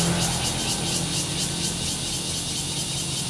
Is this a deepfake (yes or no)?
yes